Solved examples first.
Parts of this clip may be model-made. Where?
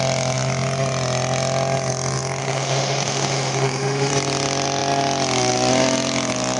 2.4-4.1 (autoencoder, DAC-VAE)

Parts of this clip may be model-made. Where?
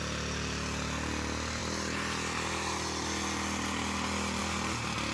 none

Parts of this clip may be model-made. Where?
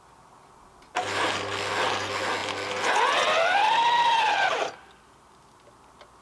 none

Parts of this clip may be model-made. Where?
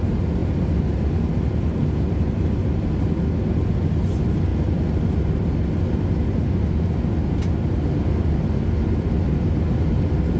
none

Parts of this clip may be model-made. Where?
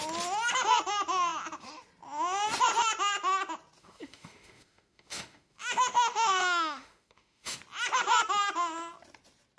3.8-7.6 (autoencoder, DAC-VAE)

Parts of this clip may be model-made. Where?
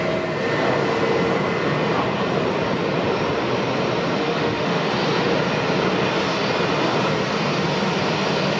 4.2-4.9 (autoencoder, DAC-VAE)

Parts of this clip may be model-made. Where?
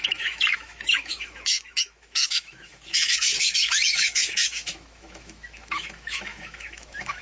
0.0-7.2 (autoencoder, DAC-VAE)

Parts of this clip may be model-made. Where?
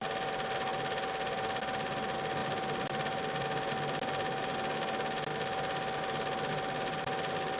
none